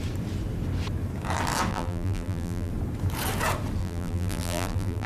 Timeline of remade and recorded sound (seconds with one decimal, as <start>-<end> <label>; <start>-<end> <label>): 0.0-1.7 recorded; 1.7-2.7 remade; 2.7-3.8 recorded; 3.8-5.1 remade